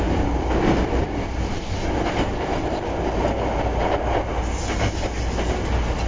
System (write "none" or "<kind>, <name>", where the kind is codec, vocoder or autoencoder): none